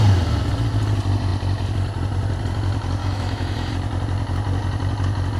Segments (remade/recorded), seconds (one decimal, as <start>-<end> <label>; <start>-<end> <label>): 0.0-3.0 recorded; 3.0-3.7 remade; 3.7-5.4 recorded